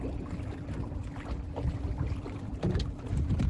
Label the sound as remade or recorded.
recorded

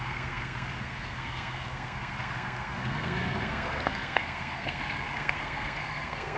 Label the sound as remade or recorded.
remade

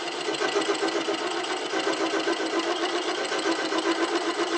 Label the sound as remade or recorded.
recorded